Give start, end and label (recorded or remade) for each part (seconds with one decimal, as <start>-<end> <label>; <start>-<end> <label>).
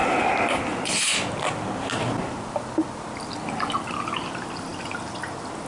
0.0-5.7 recorded